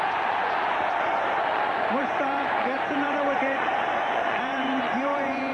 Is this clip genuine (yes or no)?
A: no